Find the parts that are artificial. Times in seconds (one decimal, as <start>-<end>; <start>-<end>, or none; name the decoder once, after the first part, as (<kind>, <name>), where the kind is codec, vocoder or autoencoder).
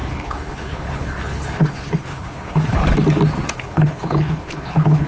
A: 0.0-2.8 (codec, HILCodec); 3.5-5.1